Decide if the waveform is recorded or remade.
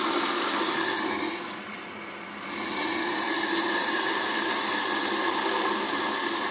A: recorded